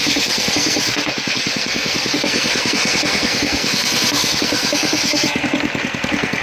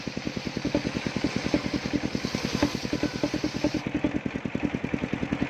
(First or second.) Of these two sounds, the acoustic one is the second